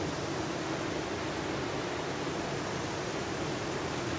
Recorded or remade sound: recorded